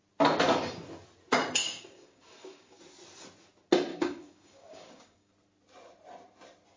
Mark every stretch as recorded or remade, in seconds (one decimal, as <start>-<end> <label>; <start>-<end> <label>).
0.0-1.6 recorded; 1.6-2.8 remade; 2.8-3.9 recorded; 3.9-5.3 remade; 5.3-6.8 recorded